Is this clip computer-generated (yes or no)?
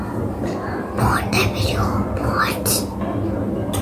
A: no